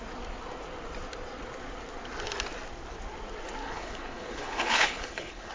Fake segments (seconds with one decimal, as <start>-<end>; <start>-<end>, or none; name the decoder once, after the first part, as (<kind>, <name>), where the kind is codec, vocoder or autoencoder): 3.6-5.5 (codec, HILCodec)